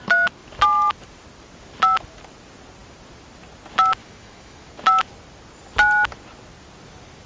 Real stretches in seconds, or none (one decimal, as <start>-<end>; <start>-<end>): 0.0-4.0; 4.7-7.3